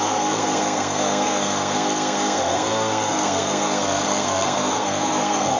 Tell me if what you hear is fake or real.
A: fake